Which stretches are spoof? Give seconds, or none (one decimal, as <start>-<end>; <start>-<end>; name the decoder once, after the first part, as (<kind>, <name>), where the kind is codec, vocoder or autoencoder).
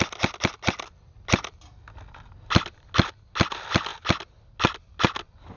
none